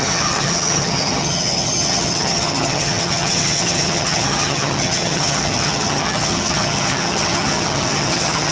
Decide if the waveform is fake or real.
fake